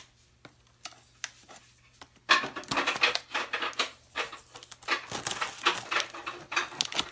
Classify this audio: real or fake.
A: real